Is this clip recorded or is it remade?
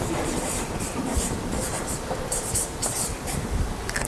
remade